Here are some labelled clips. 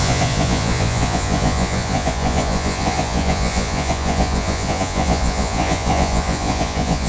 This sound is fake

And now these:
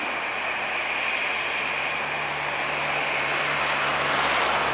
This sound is real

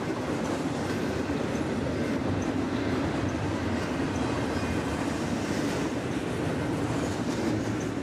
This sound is real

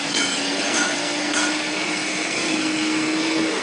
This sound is fake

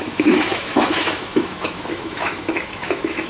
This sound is fake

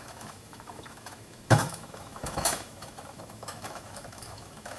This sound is fake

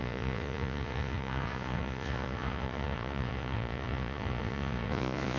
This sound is fake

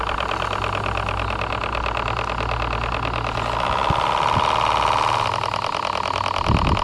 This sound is real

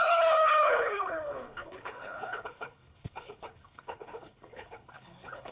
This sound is fake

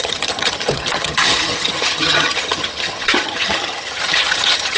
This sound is fake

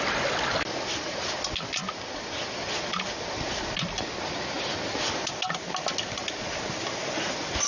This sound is real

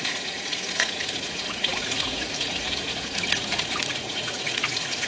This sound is fake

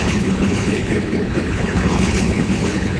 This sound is fake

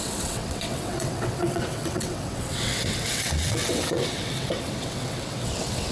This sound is fake